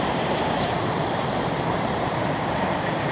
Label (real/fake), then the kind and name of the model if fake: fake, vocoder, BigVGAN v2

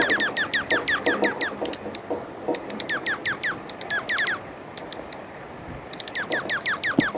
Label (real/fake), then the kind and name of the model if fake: real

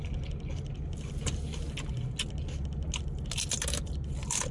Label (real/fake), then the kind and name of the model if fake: real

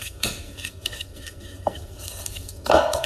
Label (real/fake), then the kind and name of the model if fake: fake, codec, SNAC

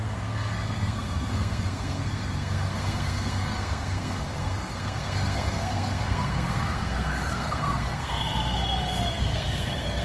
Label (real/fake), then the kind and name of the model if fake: fake, codec, SNAC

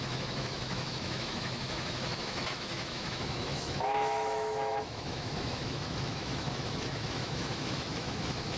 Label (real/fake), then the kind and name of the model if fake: fake, autoencoder, DAC-VAE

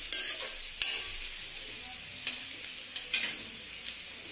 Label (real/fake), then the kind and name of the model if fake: real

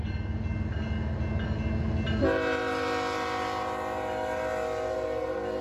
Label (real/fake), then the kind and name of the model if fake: real